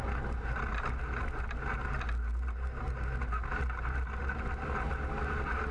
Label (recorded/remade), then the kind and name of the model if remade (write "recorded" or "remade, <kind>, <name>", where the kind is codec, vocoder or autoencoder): recorded